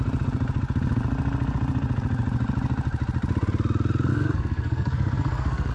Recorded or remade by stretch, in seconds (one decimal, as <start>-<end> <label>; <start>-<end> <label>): 0.0-4.1 recorded; 4.1-5.7 remade